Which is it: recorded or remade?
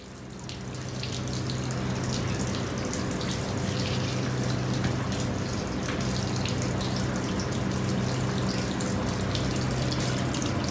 recorded